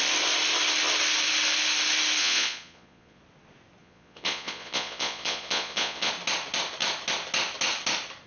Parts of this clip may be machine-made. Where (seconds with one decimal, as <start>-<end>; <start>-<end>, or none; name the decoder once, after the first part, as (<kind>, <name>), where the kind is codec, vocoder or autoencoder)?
2.2-3.2 (vocoder, Vocos); 3.8-6.1